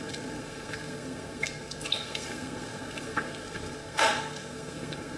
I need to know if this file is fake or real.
fake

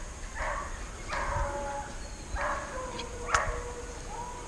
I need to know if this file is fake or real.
real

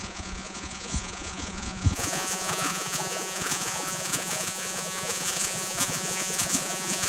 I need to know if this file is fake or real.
fake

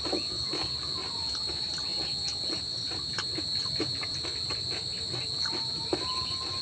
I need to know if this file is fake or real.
real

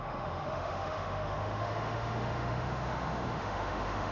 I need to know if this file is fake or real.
fake